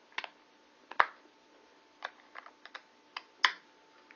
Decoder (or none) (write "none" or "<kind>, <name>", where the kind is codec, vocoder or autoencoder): none